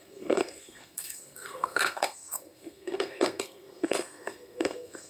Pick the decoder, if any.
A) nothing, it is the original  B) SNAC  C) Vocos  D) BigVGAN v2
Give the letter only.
B